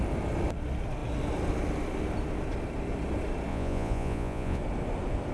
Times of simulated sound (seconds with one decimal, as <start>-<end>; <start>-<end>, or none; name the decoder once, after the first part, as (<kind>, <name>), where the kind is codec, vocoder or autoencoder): 3.5-4.6 (vocoder, Vocos)